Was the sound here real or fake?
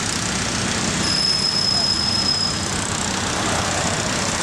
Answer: real